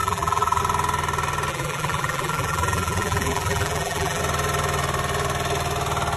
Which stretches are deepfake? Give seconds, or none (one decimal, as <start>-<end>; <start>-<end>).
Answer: 0.0-0.6; 1.5-4.2